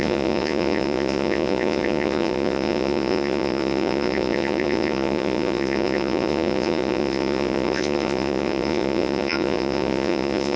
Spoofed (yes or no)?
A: yes